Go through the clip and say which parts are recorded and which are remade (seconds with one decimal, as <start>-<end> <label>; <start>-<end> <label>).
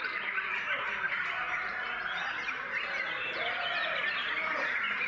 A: 0.0-5.1 recorded